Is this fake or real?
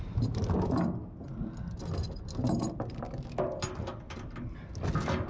real